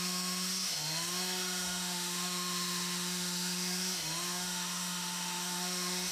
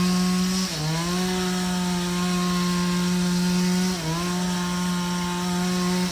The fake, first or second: first